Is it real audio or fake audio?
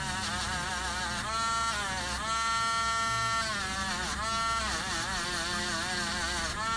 real